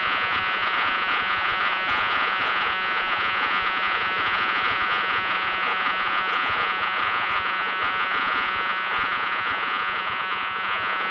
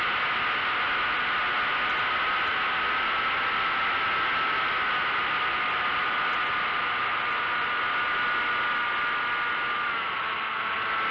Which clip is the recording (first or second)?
second